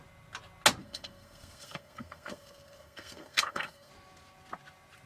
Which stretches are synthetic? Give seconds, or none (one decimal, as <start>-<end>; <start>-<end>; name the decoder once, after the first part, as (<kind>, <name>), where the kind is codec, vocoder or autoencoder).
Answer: 0.8-3.9 (codec, SNAC)